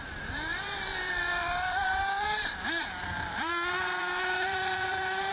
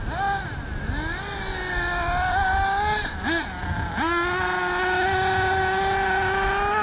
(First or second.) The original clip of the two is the second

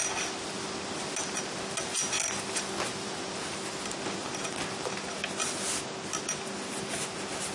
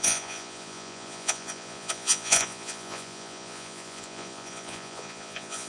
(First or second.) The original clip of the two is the first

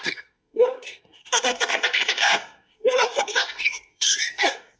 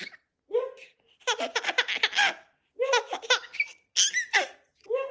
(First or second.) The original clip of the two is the second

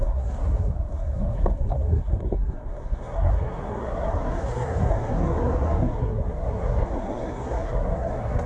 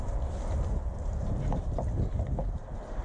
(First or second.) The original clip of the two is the second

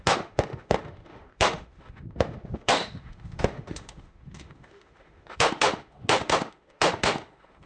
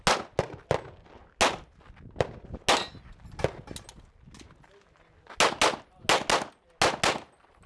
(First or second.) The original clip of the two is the second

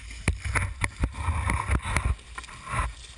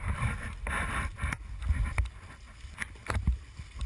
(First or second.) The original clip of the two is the first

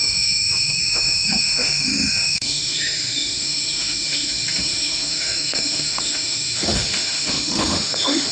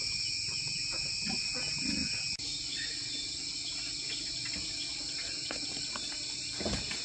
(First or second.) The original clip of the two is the second